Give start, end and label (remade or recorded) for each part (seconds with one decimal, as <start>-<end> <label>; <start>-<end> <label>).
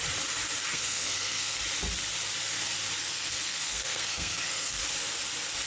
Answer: 0.0-0.7 recorded; 0.7-1.6 remade; 1.6-3.0 recorded; 3.0-4.8 remade; 4.8-5.7 recorded